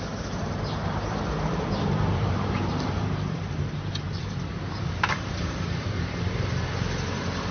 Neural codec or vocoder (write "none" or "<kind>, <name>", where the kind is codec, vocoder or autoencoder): vocoder, BigVGAN v2